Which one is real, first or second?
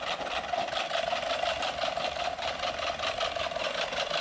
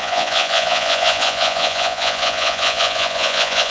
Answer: first